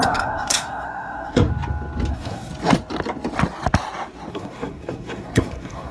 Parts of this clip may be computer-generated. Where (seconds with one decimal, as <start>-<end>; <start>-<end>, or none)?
0.0-1.5; 2.1-2.5; 4.3-5.9